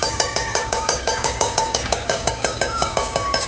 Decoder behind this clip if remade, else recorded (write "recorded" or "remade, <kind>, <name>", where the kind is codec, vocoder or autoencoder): remade, codec, DAC